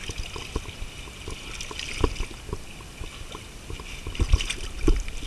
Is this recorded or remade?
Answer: recorded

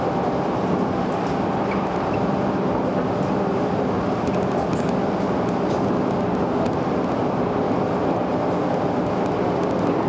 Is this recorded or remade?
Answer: recorded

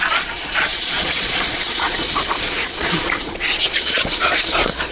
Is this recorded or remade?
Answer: remade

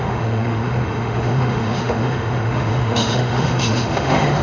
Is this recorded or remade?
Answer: remade